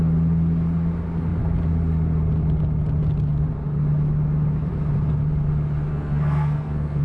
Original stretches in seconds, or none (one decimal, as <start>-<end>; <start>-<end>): 0.0-5.9

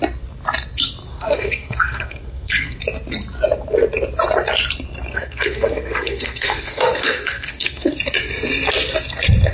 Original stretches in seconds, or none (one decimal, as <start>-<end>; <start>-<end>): 0.0-1.1; 2.8-5.1; 8.0-9.5

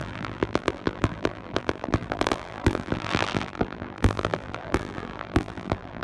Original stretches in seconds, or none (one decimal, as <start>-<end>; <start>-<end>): none

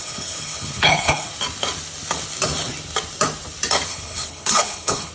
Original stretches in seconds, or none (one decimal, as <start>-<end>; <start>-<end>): 1.3-3.9

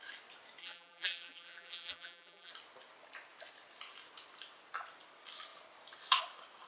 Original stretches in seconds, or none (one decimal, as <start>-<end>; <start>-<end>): 0.0-0.6; 2.5-6.7

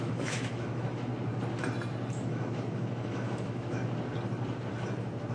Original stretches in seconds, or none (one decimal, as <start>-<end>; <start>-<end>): 1.1-2.1; 3.8-5.3

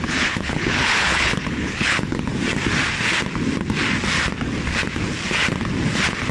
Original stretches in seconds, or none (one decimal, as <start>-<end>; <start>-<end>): 2.3-6.3